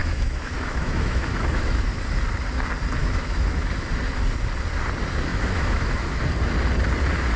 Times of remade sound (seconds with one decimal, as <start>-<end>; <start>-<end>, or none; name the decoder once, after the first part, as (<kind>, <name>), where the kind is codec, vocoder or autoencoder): 0.0-2.0 (autoencoder, DAC-VAE); 3.0-3.7; 5.3-6.2